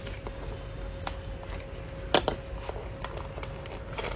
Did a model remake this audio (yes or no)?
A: no